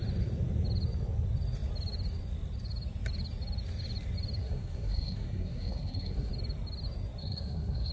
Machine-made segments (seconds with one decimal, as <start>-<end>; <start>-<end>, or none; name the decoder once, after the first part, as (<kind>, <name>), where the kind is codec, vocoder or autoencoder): 4.4-6.3 (codec, SNAC); 7.2-7.9